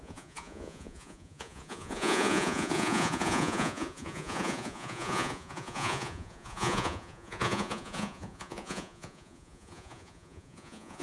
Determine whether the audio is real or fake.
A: fake